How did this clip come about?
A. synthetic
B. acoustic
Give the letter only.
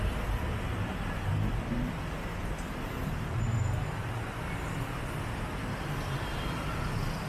B